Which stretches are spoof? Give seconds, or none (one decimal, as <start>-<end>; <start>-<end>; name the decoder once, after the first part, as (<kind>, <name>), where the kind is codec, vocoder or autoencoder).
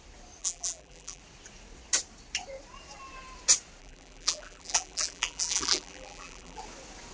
0.4-1.2 (vocoder, BigVGAN v2); 3.8-6.6